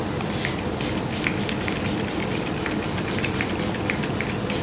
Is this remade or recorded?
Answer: recorded